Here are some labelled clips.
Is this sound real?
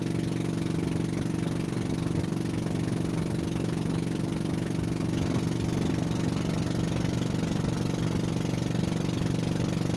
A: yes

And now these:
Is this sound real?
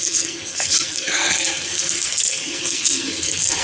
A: no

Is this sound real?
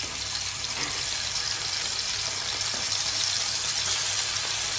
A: yes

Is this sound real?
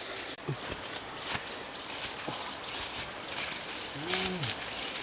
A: yes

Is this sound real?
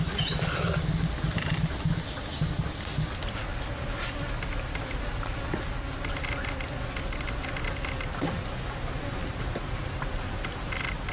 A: yes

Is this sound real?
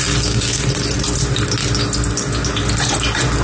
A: yes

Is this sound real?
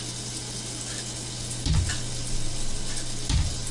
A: yes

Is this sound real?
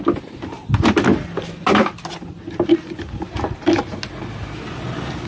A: yes